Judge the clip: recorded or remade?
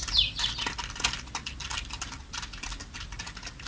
recorded